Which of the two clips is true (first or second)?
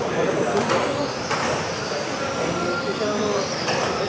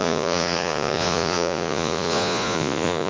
first